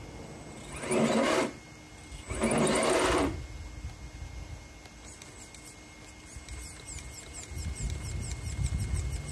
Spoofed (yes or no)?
no